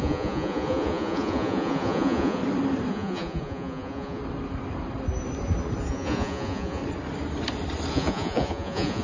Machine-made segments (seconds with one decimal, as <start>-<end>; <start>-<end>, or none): 0.0-2.4; 2.9-4.2; 5.9-6.8; 7.9-9.0